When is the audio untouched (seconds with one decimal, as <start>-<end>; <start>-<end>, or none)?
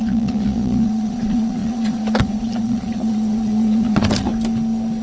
4.3-5.0